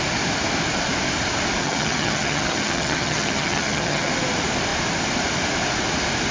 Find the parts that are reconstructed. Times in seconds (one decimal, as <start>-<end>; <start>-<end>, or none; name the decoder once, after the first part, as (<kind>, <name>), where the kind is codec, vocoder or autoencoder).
1.6-4.1 (vocoder, HiFi-GAN)